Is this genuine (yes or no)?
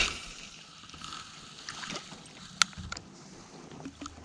yes